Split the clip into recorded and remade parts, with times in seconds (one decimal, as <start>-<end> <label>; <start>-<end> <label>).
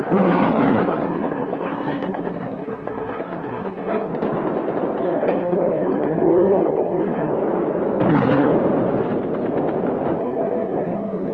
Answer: 0.0-4.1 remade; 4.1-5.0 recorded; 5.0-7.3 remade; 7.3-8.1 recorded; 8.1-8.5 remade; 8.5-10.2 recorded; 10.2-11.3 remade